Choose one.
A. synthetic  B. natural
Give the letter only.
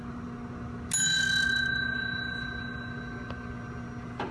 B